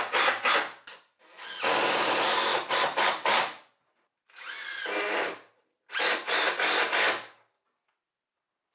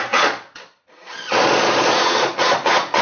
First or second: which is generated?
second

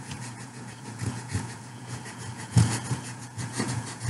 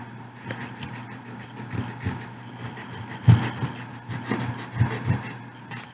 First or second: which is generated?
first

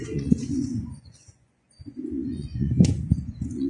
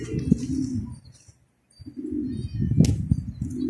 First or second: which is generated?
first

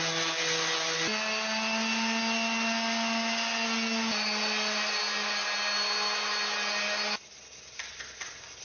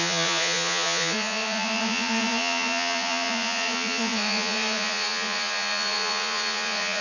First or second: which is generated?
second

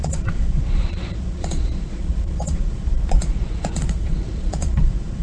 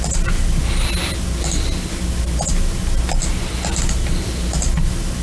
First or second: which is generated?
first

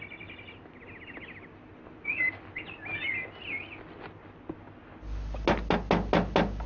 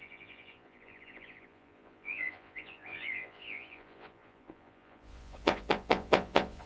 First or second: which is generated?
second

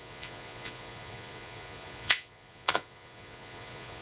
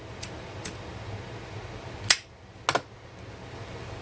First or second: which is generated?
first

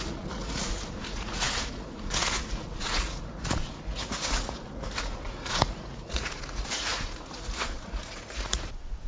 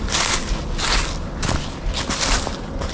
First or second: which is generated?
first